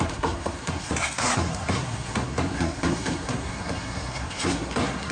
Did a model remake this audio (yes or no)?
yes